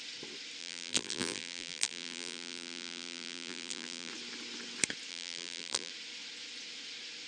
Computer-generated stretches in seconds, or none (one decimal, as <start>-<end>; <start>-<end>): 0.6-4.1; 5.1-5.9